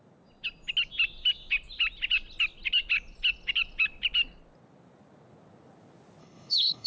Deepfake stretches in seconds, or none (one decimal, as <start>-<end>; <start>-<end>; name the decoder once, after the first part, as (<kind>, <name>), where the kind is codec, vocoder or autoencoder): 6.2-6.9 (codec, HILCodec)